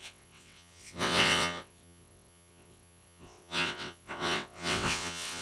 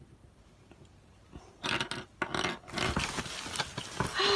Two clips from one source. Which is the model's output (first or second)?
first